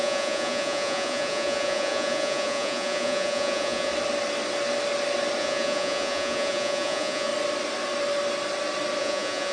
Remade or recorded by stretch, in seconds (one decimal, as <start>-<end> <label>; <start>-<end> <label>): 0.0-3.9 remade; 3.9-5.4 recorded; 5.4-7.3 remade; 7.3-9.0 recorded; 9.0-9.5 remade